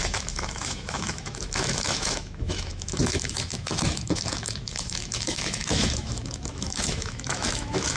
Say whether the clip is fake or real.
fake